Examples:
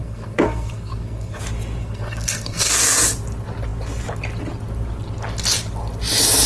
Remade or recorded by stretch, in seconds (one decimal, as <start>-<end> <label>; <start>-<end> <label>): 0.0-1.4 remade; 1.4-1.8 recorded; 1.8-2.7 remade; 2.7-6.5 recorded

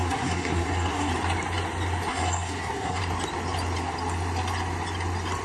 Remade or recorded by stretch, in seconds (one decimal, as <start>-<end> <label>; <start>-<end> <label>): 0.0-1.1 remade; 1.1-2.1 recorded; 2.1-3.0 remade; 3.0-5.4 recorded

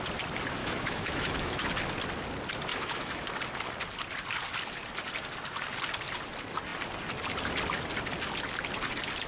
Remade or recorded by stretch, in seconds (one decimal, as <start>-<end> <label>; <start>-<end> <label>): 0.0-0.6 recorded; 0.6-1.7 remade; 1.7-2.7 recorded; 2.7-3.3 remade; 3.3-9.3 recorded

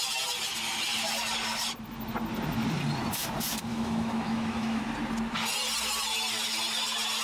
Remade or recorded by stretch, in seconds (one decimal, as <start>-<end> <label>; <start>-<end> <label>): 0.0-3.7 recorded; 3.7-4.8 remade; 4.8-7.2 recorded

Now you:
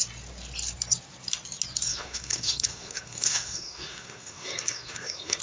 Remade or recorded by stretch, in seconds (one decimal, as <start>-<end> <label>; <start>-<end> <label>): 0.0-1.9 recorded; 1.9-5.4 remade

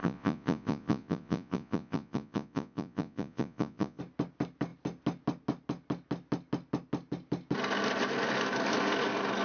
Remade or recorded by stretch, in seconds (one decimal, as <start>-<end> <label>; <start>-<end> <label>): 0.0-4.0 remade; 4.0-9.4 recorded